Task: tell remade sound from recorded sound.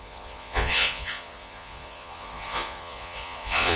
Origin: remade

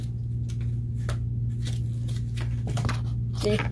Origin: recorded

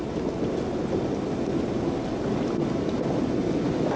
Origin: recorded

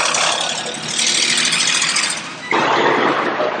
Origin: recorded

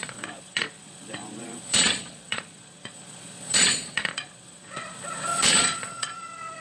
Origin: remade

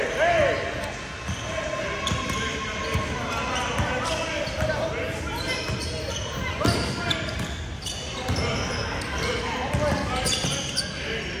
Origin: recorded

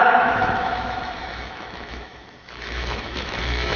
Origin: remade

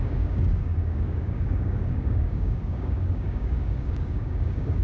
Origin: remade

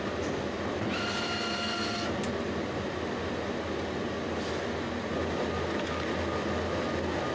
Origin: recorded